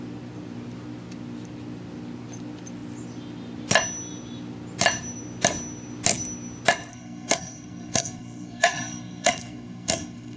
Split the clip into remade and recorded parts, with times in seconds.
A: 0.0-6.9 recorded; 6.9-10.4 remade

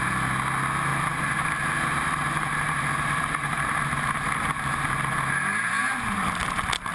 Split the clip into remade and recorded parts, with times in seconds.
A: 0.0-0.9 recorded; 0.9-4.4 remade; 4.4-6.9 recorded

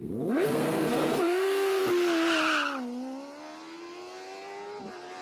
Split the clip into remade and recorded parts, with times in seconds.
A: 0.0-1.8 remade; 1.8-5.2 recorded

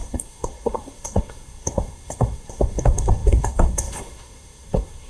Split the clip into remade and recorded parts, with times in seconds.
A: 0.0-5.1 remade

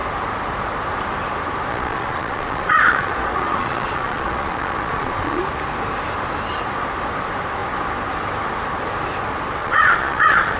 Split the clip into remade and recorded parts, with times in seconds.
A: 0.0-1.7 recorded; 1.7-5.4 remade; 5.4-9.6 recorded; 9.6-10.6 remade